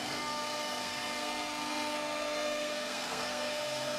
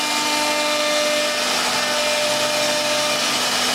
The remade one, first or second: first